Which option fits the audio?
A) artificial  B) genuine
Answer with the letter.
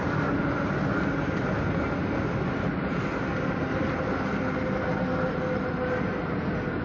B